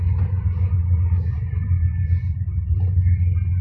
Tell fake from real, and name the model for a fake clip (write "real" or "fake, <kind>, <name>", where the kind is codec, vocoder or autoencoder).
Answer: real